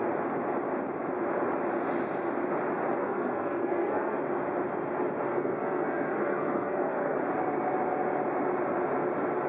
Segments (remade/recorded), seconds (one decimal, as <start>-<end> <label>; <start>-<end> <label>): 0.0-3.0 recorded; 3.0-4.2 remade; 4.2-5.3 recorded; 5.3-7.2 remade; 7.2-9.5 recorded